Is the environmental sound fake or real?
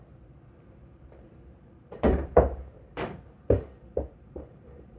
fake